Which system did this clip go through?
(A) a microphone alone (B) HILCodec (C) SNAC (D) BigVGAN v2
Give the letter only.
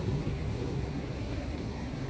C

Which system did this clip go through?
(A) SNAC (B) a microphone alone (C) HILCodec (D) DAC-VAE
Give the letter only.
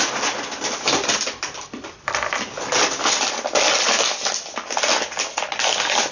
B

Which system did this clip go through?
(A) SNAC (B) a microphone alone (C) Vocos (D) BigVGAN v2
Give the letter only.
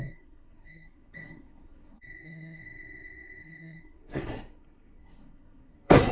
A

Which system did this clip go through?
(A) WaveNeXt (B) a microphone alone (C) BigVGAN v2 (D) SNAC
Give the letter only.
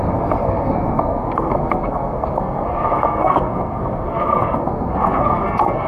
D